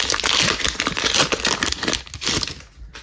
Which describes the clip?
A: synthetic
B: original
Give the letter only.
B